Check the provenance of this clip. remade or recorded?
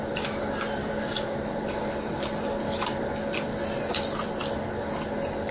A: recorded